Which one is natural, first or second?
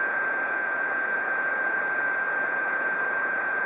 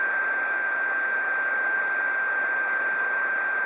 second